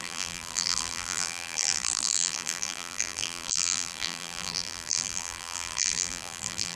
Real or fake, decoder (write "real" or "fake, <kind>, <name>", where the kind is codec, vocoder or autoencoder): fake, vocoder, BigVGAN v2